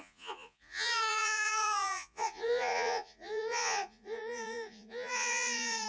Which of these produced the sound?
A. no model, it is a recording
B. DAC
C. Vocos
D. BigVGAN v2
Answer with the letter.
C